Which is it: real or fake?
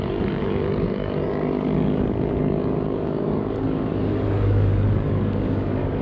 fake